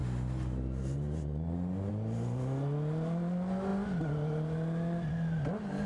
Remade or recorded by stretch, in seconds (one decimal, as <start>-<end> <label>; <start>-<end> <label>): 0.0-5.9 recorded